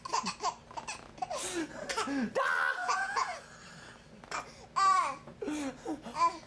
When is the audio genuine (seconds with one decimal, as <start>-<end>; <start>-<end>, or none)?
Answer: 0.0-2.8; 3.4-6.5